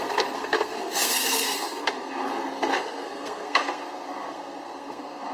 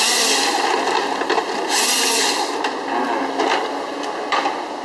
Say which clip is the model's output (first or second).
first